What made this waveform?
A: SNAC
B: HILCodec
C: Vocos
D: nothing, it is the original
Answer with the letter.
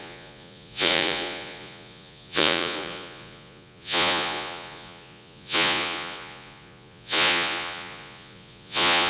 C